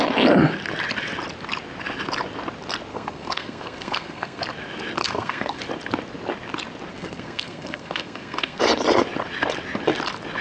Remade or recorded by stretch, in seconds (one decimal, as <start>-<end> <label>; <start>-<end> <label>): 0.0-2.9 recorded; 2.9-4.4 remade; 4.4-5.0 recorded; 5.0-5.6 remade; 5.6-6.9 recorded; 6.9-8.6 remade; 8.6-10.4 recorded